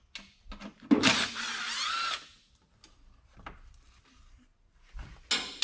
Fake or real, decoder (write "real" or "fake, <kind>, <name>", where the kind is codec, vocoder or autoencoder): real